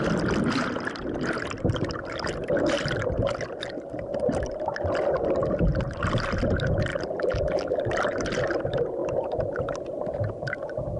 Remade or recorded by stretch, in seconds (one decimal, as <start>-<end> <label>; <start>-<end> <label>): 0.0-6.9 recorded; 6.9-7.8 remade; 7.8-11.0 recorded